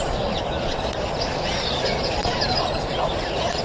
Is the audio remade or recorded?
remade